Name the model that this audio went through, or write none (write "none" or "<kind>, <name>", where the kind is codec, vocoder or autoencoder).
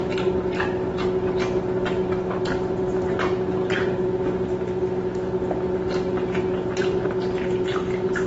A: none